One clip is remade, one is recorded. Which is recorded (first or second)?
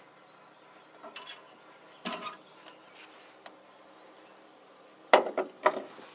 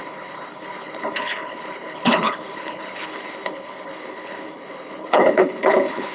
first